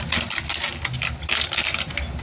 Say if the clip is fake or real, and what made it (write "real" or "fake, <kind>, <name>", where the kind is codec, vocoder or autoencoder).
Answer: real